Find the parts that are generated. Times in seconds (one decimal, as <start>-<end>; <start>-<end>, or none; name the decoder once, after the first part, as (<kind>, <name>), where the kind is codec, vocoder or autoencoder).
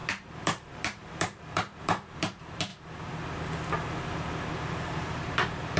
0.0-2.7 (vocoder, BigVGAN v2); 4.5-5.8